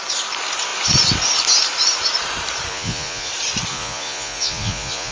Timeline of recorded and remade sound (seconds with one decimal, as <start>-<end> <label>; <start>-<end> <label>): 0.0-2.7 recorded; 2.7-3.3 remade; 3.3-3.7 recorded; 3.7-5.1 remade